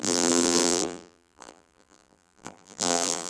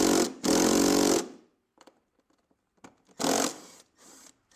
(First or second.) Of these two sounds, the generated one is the first